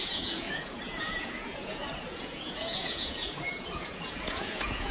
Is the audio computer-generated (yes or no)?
yes